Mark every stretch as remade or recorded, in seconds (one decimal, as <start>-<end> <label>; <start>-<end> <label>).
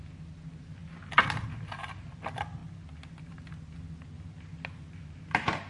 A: 0.0-5.7 recorded